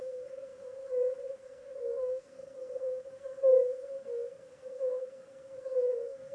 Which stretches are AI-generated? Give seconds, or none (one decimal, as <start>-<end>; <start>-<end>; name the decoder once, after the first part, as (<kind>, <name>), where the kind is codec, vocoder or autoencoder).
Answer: 0.0-6.3 (codec, SNAC)